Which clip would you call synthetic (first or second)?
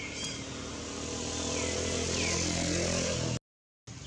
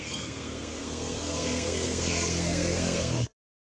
second